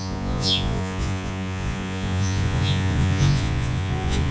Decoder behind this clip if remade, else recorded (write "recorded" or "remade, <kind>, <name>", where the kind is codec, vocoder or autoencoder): remade, vocoder, Vocos